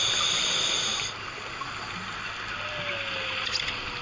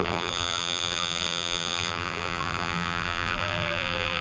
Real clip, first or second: first